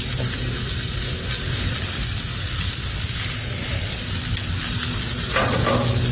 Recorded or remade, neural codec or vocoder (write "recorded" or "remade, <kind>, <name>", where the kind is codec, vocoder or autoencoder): recorded